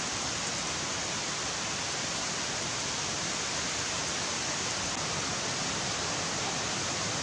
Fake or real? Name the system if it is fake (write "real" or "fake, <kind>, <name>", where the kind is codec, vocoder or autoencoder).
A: real